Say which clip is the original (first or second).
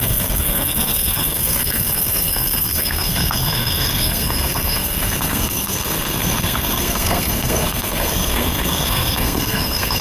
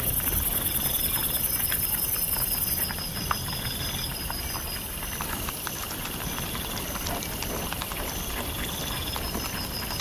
second